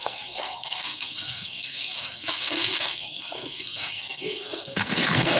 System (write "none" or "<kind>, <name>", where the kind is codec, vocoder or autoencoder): codec, SNAC